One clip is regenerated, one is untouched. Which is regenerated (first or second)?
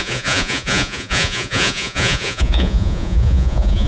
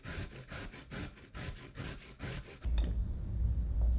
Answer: first